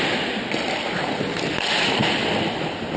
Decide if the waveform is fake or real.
real